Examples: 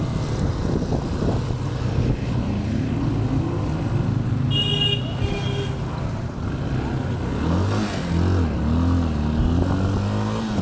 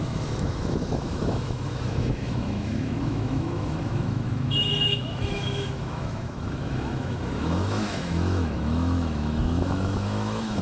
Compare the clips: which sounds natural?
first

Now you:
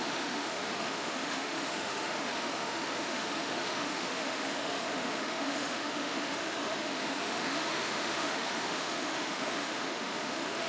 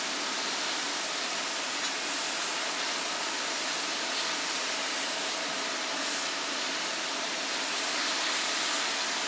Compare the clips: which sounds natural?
second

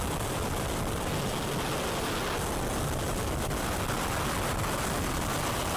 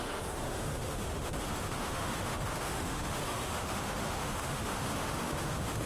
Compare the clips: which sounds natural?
first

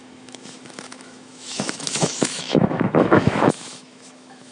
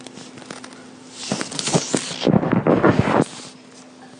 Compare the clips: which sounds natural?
second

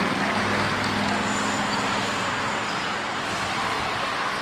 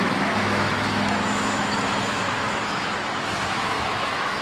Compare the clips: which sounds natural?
first